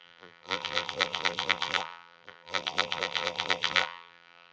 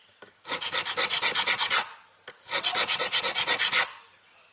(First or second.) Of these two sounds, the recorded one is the second